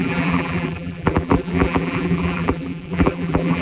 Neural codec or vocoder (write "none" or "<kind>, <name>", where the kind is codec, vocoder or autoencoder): vocoder, BigVGAN v2